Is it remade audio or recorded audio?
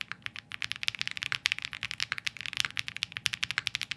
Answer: recorded